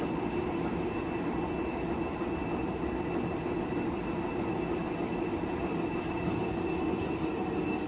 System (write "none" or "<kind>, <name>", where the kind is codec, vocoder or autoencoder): none